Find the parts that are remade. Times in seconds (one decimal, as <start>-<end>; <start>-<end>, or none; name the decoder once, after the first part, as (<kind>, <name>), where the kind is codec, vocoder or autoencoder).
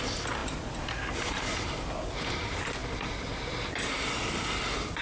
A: 0.0-5.0 (vocoder, BigVGAN v2)